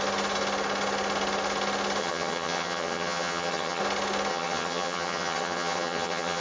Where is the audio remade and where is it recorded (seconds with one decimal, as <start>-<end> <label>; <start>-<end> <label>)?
0.0-2.0 recorded; 2.0-3.8 remade; 3.8-4.3 recorded; 4.3-6.4 remade